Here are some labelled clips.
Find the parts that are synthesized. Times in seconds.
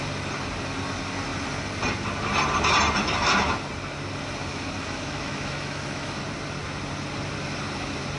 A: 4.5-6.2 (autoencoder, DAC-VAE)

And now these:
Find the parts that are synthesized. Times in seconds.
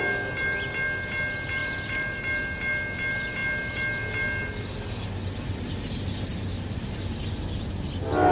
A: 1.6-2.2 (vocoder, BigVGAN v2)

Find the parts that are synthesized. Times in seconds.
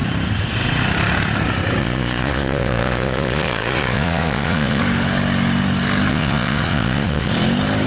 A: 1.8-4.8 (vocoder, Vocos); 6.1-7.3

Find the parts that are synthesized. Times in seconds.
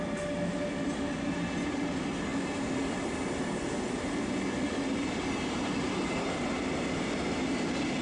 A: none